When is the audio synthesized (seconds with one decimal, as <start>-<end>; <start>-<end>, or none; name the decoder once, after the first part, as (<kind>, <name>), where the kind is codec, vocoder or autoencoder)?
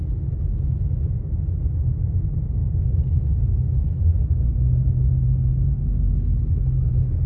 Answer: none